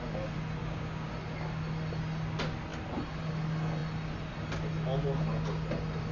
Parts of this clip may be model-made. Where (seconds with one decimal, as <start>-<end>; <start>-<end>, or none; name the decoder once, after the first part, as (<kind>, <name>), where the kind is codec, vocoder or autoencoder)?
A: 0.6-1.1 (codec, DAC)

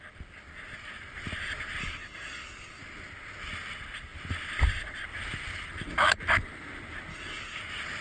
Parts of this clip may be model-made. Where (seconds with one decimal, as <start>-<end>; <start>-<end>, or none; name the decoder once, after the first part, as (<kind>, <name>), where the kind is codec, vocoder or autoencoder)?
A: 1.8-2.8 (codec, DAC); 7.1-7.6